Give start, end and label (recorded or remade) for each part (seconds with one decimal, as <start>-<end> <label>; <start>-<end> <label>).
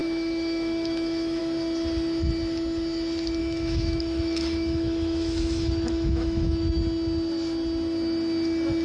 0.0-1.4 remade; 1.4-3.4 recorded; 3.4-6.8 remade; 6.8-8.8 recorded